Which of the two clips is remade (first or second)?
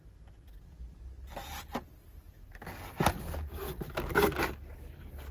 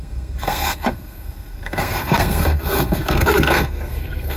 second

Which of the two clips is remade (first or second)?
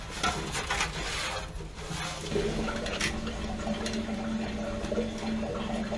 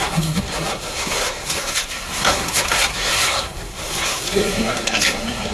second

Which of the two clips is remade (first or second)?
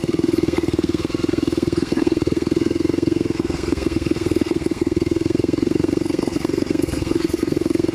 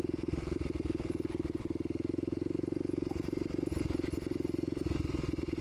first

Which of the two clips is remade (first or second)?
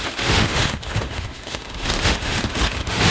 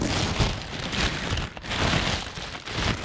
first